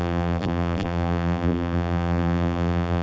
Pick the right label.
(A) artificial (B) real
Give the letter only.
A